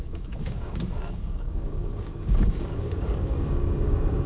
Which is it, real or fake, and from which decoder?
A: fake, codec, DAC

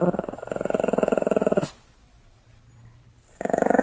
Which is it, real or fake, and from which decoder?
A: real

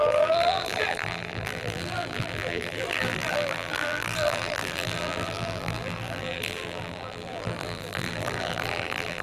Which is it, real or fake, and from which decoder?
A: fake, vocoder, BigVGAN v2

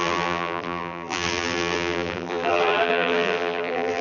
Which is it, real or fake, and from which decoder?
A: fake, vocoder, BigVGAN v2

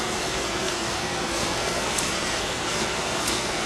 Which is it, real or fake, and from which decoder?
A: fake, codec, SNAC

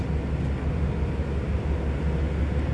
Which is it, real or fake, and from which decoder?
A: real